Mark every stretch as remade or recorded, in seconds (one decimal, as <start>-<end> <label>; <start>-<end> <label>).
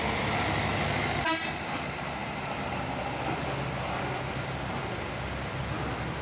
0.0-6.2 recorded